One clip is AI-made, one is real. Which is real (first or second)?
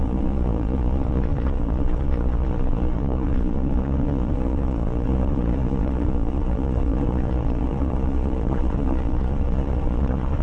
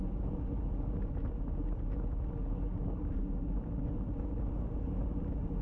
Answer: second